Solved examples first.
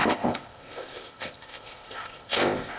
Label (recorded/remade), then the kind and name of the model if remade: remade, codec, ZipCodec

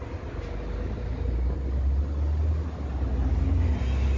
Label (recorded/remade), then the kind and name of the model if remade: recorded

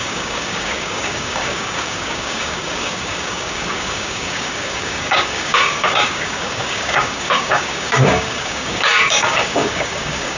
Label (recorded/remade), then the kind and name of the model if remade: remade, codec, DAC